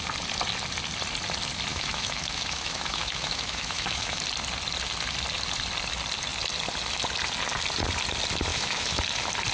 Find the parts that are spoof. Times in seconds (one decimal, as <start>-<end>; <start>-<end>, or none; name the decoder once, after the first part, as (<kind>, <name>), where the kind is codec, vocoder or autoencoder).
1.7-4.2 (autoencoder, DAC-VAE); 8.5-9.0